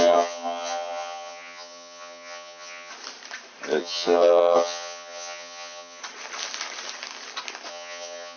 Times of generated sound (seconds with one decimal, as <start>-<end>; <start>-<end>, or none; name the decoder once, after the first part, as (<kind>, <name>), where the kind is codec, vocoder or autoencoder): 0.0-2.9 (vocoder, HiFi-GAN); 3.8-6.0; 7.7-8.4